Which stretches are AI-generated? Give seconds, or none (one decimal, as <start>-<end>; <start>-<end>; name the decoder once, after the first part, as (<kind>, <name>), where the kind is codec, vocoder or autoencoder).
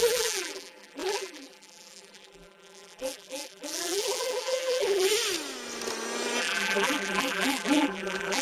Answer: 0.0-5.1 (vocoder, BigVGAN v2); 6.4-8.4